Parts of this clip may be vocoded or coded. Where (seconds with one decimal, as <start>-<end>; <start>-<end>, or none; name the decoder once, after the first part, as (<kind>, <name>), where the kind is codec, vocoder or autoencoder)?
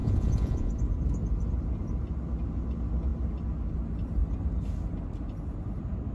0.0-0.7 (vocoder, Vocos)